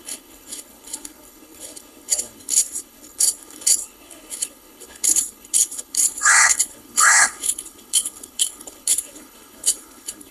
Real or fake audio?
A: fake